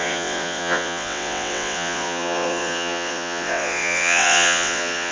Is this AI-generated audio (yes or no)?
yes